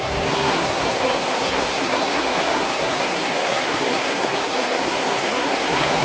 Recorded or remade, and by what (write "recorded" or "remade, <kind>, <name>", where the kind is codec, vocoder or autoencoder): remade, codec, SNAC